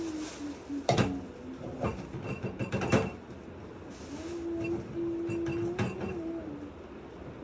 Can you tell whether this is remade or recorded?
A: recorded